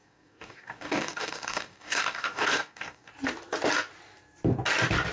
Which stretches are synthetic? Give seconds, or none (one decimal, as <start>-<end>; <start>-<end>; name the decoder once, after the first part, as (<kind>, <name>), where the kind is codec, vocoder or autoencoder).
0.0-3.1 (codec, DAC)